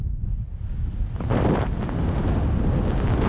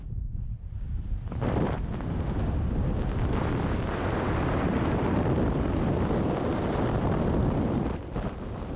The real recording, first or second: first